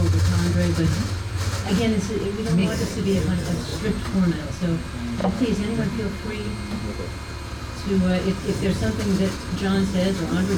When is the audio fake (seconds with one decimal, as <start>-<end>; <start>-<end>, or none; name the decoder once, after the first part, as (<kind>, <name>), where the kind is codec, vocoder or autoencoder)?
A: 2.6-3.2 (vocoder, BigVGAN v2)